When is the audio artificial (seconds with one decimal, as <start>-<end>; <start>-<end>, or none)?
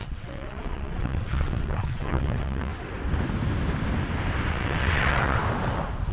0.0-2.7; 4.5-5.4